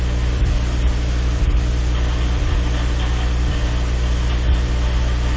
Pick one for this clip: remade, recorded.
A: recorded